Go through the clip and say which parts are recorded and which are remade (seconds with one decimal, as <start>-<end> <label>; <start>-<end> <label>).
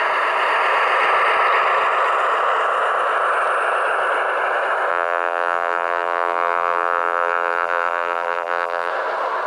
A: 0.0-4.9 recorded; 4.9-8.9 remade; 8.9-9.5 recorded